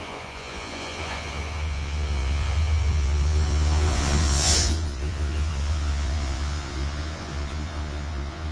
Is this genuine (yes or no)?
no